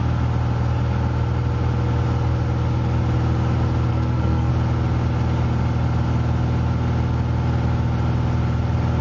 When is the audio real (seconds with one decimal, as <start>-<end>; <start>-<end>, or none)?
0.0-3.9; 4.5-9.0